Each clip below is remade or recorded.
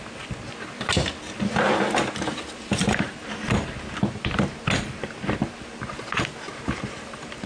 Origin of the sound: recorded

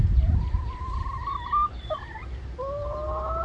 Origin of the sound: recorded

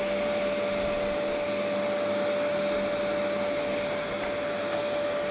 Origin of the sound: recorded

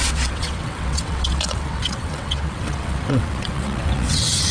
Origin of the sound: remade